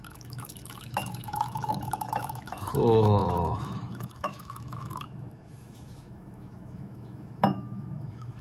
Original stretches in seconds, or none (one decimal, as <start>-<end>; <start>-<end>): none